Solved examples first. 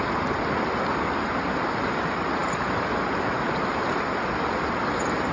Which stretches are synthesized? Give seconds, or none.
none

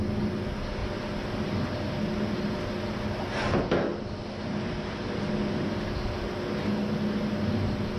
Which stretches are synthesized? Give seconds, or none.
none

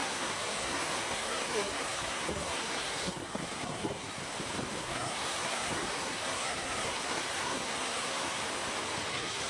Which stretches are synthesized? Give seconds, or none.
0.0-4.2 (codec, SNAC); 4.8-8.4; 9.1-9.5

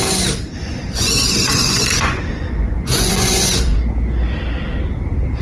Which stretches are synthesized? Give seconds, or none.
0.6-3.8 (vocoder, Vocos)